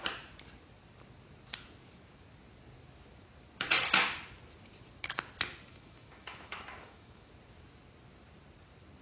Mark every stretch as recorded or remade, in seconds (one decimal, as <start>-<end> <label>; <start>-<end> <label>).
0.0-5.7 recorded; 5.7-7.3 remade; 7.3-9.0 recorded